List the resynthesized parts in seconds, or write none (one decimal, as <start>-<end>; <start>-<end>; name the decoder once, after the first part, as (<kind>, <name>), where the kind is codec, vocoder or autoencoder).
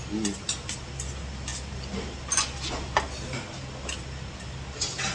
none